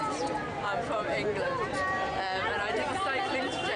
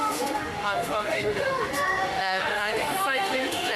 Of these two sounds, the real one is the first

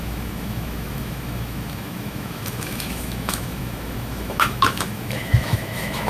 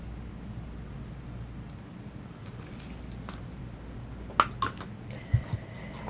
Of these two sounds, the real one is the second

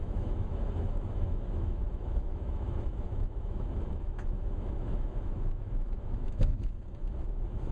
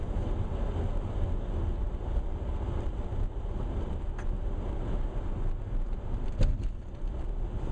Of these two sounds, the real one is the second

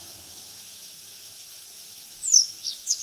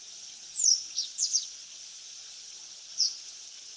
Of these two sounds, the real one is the second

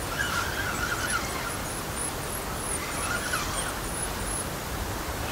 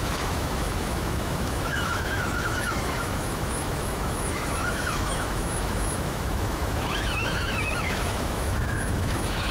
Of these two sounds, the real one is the first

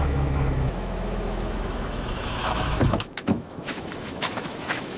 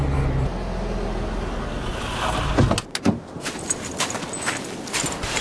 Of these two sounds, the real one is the second